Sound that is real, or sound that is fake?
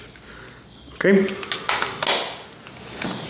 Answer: real